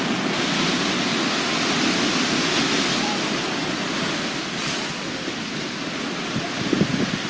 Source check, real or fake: real